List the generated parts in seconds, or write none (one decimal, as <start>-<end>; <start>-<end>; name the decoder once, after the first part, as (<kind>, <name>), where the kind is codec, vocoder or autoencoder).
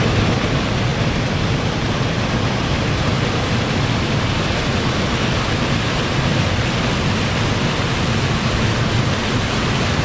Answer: none